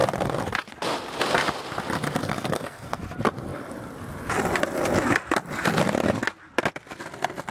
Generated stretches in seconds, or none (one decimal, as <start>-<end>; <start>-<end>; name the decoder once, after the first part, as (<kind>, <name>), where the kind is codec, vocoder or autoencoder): 2.2-3.0 (codec, SNAC)